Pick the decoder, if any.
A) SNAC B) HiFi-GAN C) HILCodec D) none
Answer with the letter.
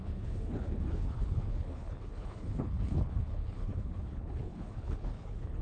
C